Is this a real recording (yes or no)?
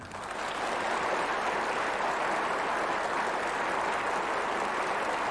yes